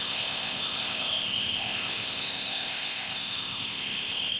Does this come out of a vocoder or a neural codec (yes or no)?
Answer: yes